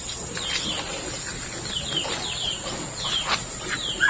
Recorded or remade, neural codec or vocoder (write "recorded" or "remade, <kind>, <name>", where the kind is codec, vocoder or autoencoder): recorded